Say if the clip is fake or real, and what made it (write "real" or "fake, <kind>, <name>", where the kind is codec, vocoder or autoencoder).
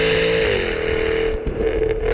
real